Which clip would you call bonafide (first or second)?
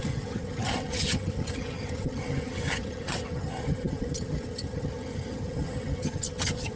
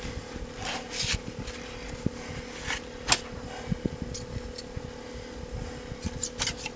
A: second